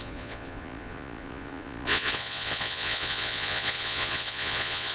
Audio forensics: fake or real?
fake